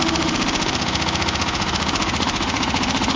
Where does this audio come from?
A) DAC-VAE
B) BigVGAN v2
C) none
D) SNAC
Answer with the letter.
A